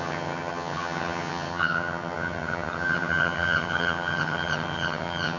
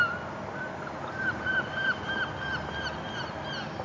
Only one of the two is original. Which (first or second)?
second